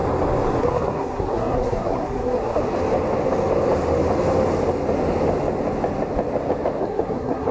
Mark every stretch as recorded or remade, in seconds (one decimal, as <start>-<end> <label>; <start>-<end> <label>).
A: 0.0-0.6 recorded; 0.6-2.6 remade; 2.6-6.8 recorded; 6.8-7.5 remade